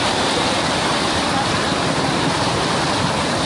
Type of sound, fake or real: fake